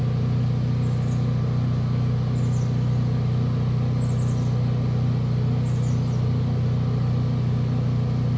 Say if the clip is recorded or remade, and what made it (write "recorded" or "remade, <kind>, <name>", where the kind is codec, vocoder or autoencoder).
recorded